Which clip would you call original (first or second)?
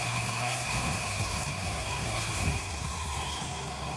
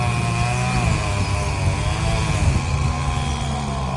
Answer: second